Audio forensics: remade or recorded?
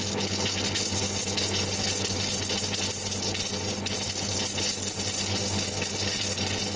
recorded